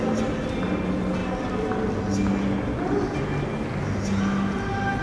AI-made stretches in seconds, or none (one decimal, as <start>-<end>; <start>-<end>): none